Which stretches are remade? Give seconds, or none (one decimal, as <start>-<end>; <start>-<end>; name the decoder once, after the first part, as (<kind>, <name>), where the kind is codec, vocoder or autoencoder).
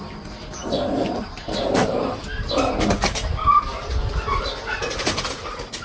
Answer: 0.6-2.5 (vocoder, BigVGAN v2)